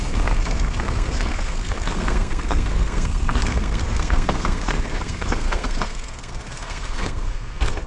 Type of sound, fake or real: fake